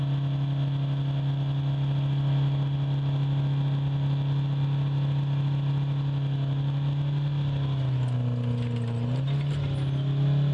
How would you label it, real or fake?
real